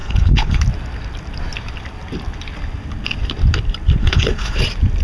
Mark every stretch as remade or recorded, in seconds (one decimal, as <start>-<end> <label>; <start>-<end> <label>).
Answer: 0.0-0.6 remade; 0.6-4.0 recorded; 4.0-4.6 remade; 4.6-5.0 recorded